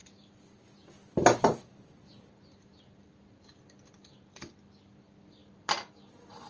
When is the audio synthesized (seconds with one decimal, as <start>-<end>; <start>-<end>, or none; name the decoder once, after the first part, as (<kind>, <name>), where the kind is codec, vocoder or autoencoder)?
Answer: none